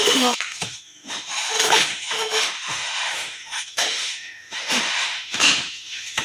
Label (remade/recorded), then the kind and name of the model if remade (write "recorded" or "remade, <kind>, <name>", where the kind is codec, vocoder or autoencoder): remade, autoencoder, DAC-VAE